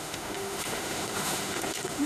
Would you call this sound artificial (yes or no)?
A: yes